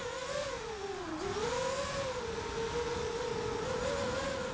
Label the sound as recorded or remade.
recorded